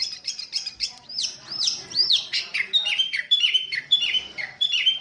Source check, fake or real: fake